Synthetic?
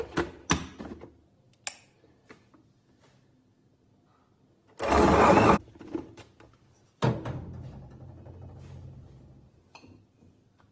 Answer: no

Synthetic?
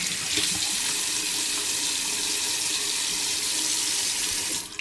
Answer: no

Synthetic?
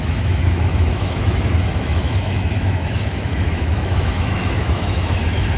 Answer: yes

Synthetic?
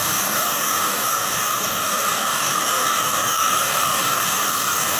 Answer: yes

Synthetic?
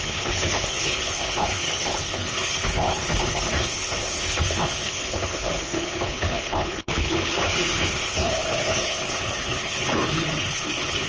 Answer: yes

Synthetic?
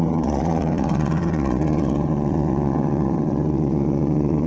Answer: yes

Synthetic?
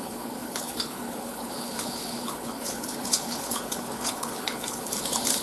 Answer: yes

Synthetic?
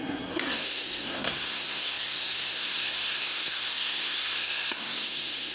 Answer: yes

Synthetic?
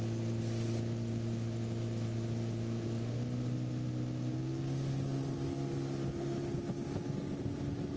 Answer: no